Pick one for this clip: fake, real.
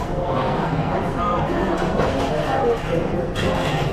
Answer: fake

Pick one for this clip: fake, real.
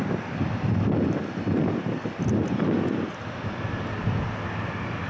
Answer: real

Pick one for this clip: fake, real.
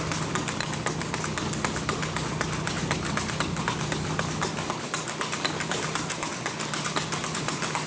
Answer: real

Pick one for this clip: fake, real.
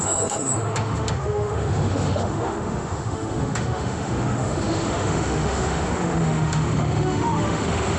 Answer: fake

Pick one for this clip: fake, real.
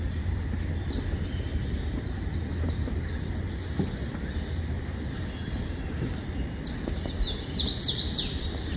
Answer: real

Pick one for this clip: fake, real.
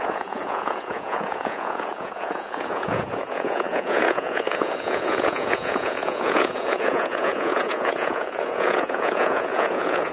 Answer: fake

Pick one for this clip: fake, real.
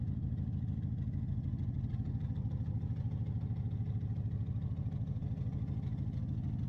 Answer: real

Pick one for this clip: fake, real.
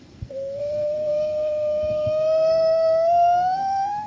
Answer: fake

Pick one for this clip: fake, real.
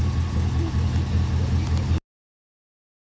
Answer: real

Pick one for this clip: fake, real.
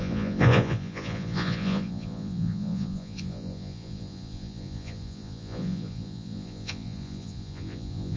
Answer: fake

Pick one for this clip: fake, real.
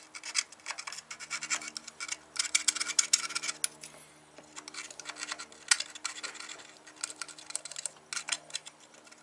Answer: real